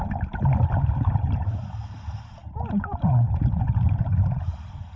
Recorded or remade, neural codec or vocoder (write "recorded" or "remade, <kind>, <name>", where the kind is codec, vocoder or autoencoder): recorded